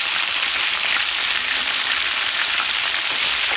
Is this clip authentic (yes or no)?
yes